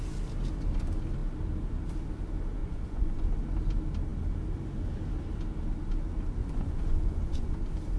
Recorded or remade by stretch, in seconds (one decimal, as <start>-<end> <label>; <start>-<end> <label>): 0.0-2.6 recorded; 2.6-3.2 remade; 3.2-6.4 recorded; 6.4-7.6 remade; 7.6-8.0 recorded